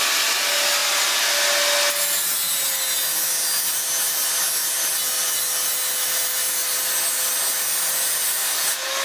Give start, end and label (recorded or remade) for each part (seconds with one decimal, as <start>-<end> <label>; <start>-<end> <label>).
0.0-9.0 recorded